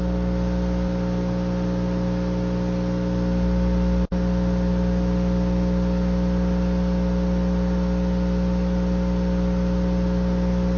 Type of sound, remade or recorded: recorded